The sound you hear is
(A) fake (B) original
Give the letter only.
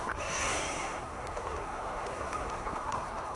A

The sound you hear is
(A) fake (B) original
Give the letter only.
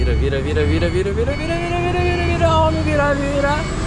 B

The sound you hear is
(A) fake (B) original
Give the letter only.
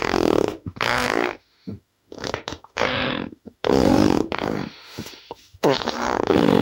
A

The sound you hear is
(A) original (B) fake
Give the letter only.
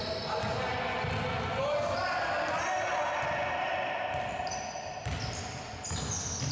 A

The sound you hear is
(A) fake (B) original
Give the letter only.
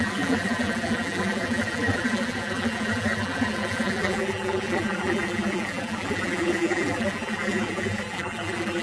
A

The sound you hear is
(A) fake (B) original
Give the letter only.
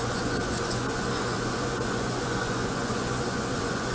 A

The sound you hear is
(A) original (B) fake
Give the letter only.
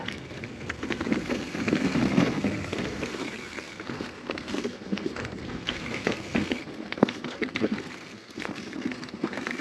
B